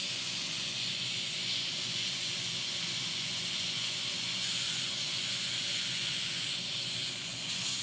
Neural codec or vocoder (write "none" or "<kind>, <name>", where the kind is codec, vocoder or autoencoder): vocoder, Vocos